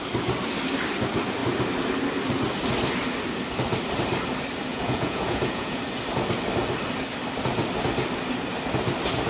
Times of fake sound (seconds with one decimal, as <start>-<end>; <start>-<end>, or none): 4.7-5.8